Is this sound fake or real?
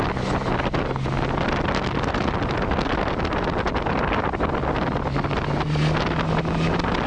real